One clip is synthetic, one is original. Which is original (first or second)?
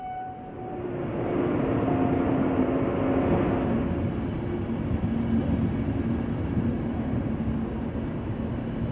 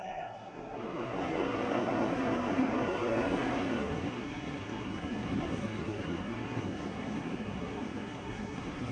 first